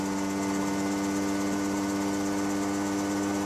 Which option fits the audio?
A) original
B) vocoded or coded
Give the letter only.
A